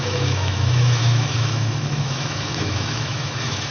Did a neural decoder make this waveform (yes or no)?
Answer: yes